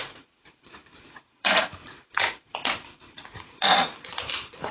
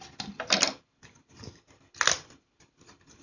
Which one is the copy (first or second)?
first